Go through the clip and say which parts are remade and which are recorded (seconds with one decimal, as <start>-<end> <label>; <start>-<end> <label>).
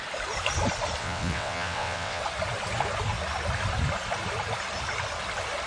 0.0-1.0 recorded; 1.0-2.2 remade; 2.2-5.7 recorded